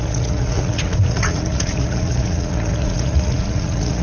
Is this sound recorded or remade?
remade